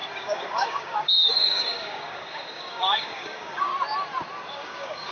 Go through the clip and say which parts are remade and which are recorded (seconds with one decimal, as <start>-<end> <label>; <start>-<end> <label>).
0.0-3.7 remade; 3.7-4.5 recorded; 4.5-5.1 remade